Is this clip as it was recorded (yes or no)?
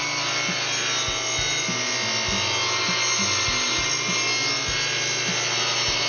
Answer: yes